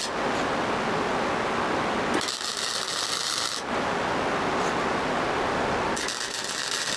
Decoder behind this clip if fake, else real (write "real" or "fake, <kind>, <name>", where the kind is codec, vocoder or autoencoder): real